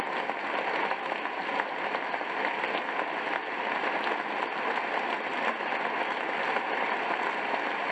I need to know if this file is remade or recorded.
recorded